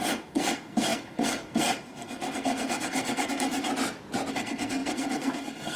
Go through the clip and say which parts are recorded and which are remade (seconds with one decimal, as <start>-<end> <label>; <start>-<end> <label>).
0.0-3.7 remade; 3.7-4.3 recorded; 4.3-5.8 remade